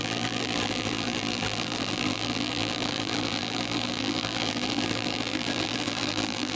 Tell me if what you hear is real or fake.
fake